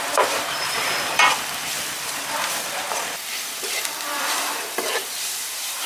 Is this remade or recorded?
remade